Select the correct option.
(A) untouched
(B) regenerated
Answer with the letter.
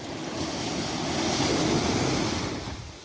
A